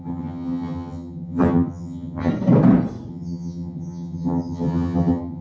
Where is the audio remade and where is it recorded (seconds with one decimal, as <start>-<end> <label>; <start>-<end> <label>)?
0.0-2.3 remade; 2.3-3.1 recorded; 3.1-5.4 remade